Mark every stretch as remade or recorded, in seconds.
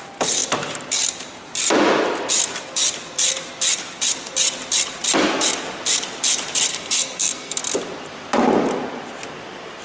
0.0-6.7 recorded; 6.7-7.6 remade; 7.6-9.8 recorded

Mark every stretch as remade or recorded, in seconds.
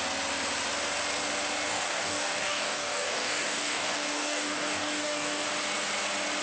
0.0-1.7 recorded; 1.7-5.5 remade; 5.5-6.4 recorded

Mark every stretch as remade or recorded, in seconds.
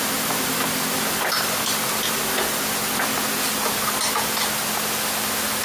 0.0-5.6 recorded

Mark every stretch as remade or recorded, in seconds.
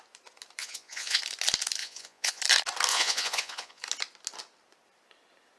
0.0-0.6 recorded; 0.6-1.2 remade; 1.2-1.8 recorded; 1.8-2.4 remade; 2.4-2.9 recorded; 2.9-3.8 remade; 3.8-5.6 recorded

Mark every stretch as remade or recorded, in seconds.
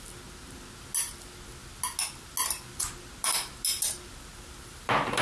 0.0-5.2 recorded